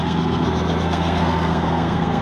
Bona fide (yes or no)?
no